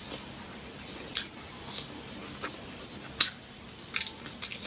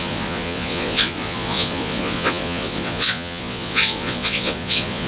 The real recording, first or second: first